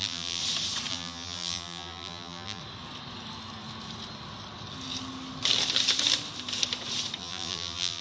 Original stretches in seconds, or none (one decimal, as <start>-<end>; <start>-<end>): 0.4-0.9; 2.6-7.2